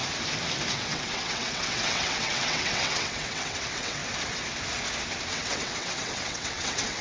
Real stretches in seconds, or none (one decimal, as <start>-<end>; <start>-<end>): 0.0-0.7; 4.0-5.3